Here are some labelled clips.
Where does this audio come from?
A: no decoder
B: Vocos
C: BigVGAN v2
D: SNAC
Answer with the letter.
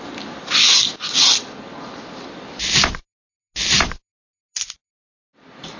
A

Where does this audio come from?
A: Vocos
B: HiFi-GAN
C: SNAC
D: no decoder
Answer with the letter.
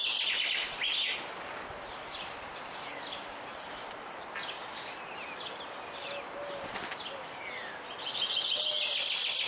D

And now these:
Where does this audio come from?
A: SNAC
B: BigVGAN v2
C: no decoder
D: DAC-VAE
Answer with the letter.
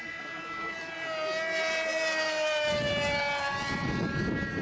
C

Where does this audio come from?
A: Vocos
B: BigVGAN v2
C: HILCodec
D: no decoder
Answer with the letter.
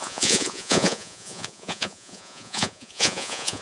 A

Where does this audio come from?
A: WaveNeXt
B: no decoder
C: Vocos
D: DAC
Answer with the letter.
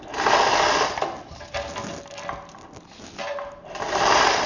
B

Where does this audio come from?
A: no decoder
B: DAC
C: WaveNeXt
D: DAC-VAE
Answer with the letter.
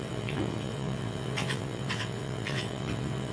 C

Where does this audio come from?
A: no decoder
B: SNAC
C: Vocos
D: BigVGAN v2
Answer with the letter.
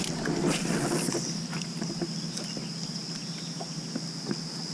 A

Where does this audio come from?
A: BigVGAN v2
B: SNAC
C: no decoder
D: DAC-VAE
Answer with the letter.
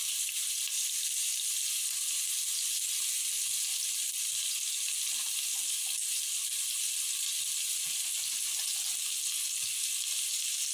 C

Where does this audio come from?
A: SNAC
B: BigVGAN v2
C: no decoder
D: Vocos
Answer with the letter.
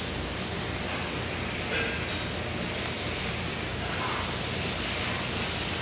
C